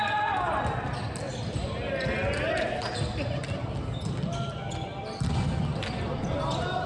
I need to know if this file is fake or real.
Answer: real